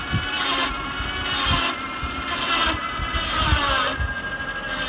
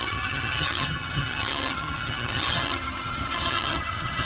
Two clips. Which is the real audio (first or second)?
first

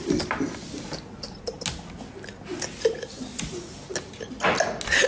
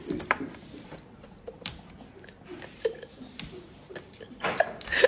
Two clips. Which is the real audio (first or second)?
first